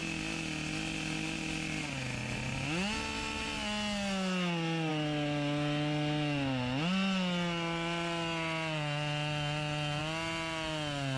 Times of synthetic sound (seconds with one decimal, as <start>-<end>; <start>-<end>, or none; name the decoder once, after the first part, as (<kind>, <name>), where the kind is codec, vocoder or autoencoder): none